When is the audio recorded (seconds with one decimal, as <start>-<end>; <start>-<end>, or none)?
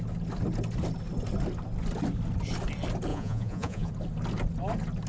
0.0-3.1; 3.9-5.1